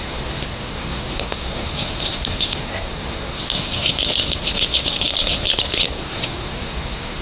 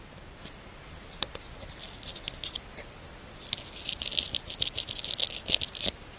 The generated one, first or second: first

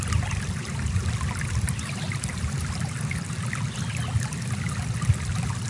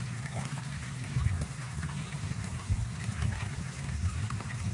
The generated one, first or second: second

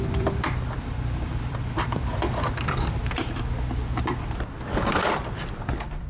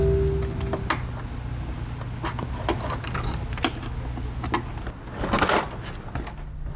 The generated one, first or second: first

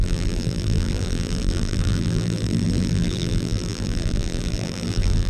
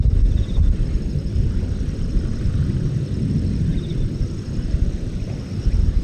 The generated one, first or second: first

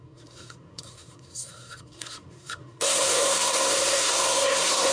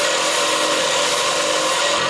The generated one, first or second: first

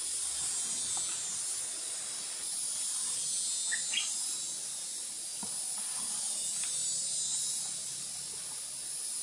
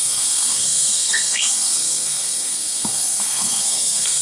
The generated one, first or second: second